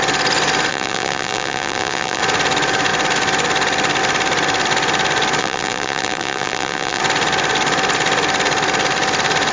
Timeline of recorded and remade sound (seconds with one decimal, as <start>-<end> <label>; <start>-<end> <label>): 0.0-0.7 recorded; 0.7-2.2 remade; 2.2-5.4 recorded; 5.4-7.0 remade; 7.0-9.5 recorded